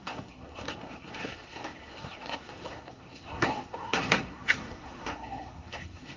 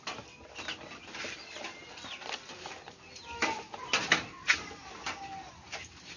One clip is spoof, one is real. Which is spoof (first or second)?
first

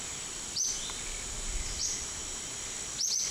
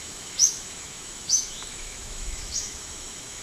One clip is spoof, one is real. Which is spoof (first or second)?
second